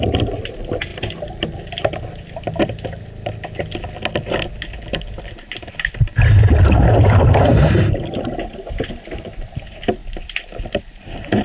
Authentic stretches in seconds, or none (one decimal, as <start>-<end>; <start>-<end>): 0.0-11.4